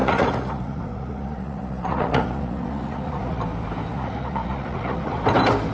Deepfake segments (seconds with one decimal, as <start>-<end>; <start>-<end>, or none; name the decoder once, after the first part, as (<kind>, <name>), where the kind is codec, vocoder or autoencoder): 0.0-3.4 (vocoder, Vocos); 3.9-5.2